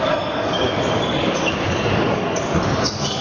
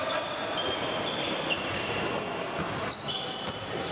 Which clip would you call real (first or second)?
second